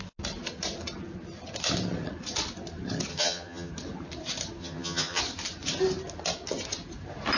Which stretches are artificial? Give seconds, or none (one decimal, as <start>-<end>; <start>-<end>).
3.1-3.7; 4.6-5.2